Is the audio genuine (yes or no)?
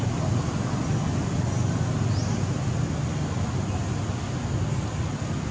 yes